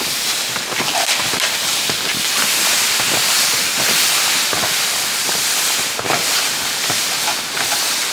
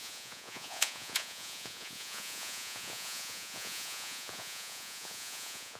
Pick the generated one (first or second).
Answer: second